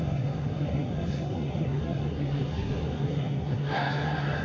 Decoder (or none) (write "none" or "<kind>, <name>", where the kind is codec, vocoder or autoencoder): codec, SNAC